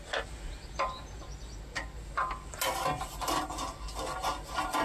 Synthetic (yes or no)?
no